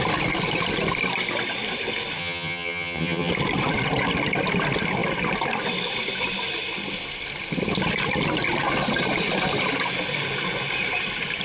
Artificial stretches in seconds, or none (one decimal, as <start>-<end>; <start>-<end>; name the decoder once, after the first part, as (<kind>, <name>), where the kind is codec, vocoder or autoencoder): 2.2-3.3 (vocoder, HiFi-GAN)